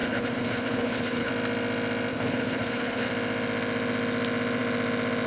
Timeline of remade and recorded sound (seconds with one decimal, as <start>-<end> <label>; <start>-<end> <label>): 0.0-1.3 remade; 1.3-2.1 recorded; 2.1-3.1 remade; 3.1-5.3 recorded